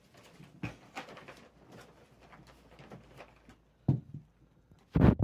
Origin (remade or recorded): recorded